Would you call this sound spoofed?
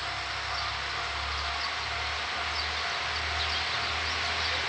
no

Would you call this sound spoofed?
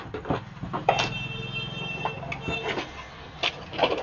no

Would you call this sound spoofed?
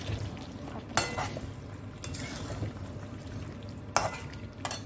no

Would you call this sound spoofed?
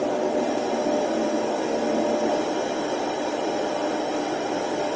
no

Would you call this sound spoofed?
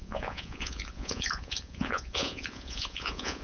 yes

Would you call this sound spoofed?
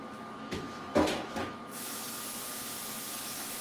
yes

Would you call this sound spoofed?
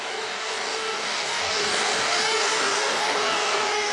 yes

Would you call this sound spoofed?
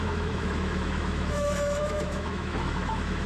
yes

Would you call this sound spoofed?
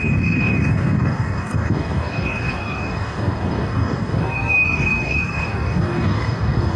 yes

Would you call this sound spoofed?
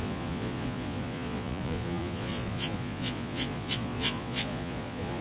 yes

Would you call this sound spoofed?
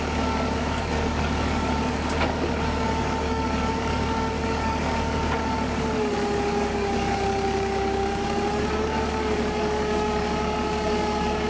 yes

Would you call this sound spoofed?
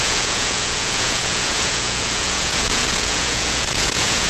yes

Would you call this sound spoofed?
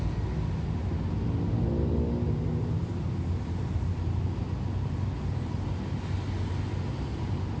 no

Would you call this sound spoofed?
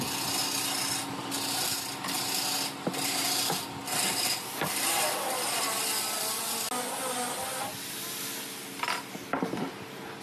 no